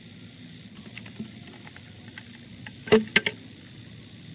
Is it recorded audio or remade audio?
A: recorded